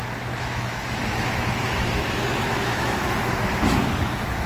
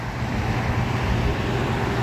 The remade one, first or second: first